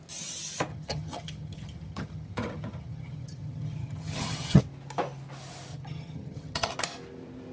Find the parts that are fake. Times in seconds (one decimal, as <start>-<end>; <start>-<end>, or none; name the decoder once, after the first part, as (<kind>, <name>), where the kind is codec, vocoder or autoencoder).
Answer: 0.7-4.6 (vocoder, HiFi-GAN); 5.7-6.7